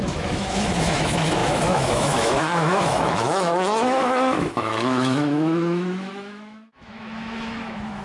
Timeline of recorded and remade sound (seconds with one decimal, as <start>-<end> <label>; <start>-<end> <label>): 0.0-8.0 remade